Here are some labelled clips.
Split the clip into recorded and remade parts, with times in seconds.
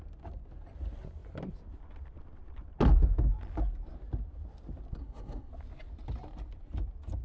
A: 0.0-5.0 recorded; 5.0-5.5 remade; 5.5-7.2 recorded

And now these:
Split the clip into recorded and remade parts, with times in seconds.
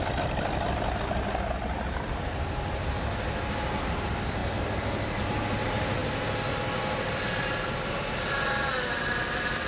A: 0.0-9.7 recorded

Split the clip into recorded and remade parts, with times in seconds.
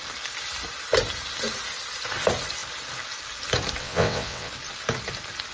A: 0.0-3.8 recorded; 3.8-4.5 remade; 4.5-5.5 recorded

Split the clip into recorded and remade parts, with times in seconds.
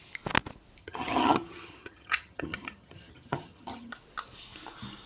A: 0.0-0.8 recorded; 0.8-3.9 remade; 3.9-5.1 recorded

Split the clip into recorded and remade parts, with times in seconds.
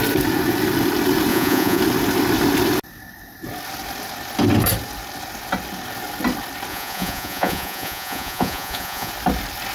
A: 0.0-1.3 recorded; 1.3-1.8 remade; 1.8-6.7 recorded; 6.7-9.1 remade; 9.1-9.7 recorded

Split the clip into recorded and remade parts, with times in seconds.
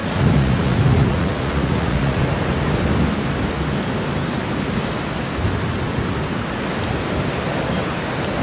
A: 0.0-2.2 remade; 2.2-8.4 recorded